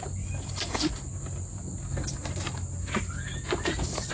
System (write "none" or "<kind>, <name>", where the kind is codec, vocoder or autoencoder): none